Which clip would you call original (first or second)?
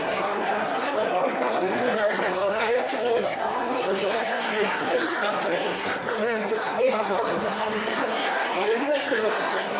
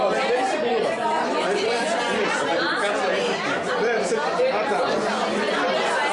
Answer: second